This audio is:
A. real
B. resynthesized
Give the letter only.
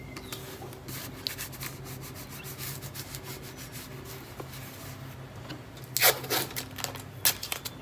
A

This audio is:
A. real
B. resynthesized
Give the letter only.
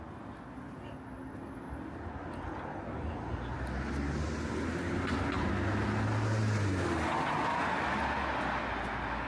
A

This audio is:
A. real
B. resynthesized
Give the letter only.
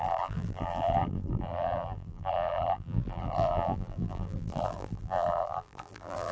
B